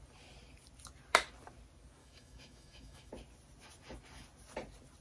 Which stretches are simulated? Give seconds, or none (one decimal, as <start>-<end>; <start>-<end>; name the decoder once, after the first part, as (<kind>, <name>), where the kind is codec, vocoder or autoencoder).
2.0-3.1 (autoencoder, DAC-VAE)